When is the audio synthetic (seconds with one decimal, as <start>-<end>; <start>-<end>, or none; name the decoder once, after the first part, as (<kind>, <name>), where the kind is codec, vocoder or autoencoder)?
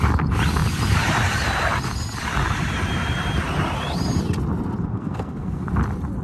4.9-5.7 (codec, SNAC)